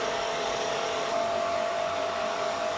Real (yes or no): no